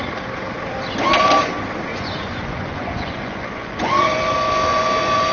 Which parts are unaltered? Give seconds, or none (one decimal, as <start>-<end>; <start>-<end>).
0.0-1.9